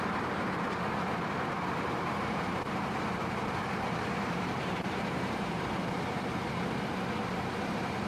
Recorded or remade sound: remade